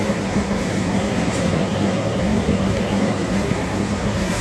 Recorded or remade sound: remade